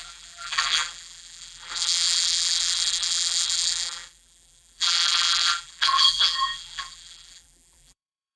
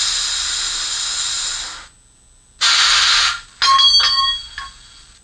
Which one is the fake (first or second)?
first